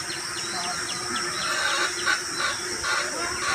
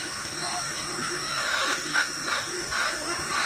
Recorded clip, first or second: first